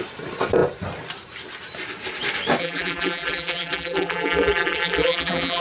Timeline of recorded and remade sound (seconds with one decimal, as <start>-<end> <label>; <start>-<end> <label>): 0.0-2.6 recorded; 2.6-5.6 remade